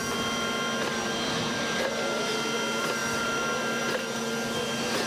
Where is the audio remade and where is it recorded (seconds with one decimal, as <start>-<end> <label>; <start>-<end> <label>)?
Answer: 0.0-5.1 recorded